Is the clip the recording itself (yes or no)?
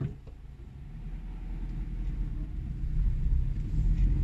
yes